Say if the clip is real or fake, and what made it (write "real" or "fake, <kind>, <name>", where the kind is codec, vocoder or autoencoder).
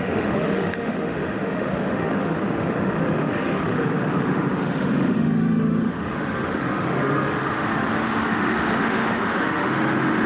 fake, autoencoder, DAC-VAE